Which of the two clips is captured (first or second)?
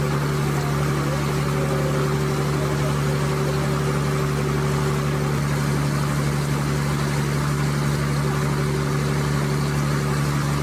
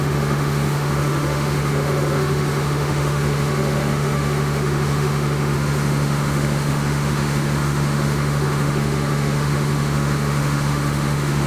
first